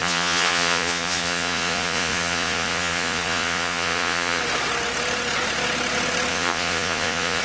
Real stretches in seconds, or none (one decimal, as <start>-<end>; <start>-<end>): 4.4-6.3